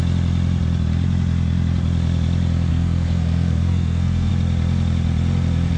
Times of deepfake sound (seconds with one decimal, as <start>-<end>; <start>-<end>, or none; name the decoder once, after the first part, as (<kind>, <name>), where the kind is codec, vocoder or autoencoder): 2.7-4.3 (codec, SNAC)